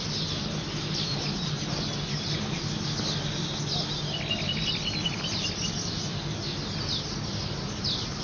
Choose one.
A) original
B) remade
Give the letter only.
A